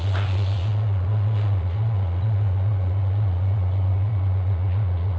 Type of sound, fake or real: fake